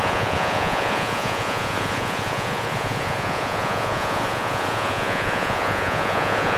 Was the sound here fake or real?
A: fake